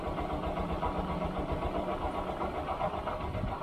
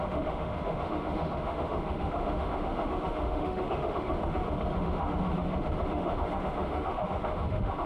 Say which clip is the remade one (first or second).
second